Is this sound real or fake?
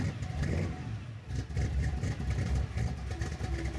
real